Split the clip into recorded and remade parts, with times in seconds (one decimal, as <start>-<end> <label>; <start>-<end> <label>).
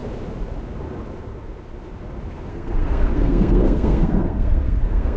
0.0-2.5 recorded; 2.5-5.2 remade